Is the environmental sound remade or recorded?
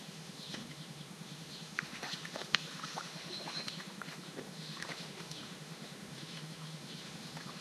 remade